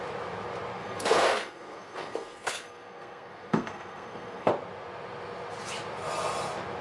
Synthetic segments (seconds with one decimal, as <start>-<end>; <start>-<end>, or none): 0.8-4.5